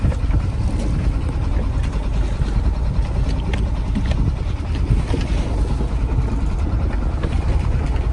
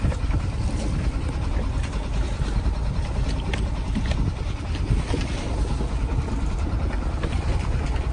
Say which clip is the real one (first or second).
first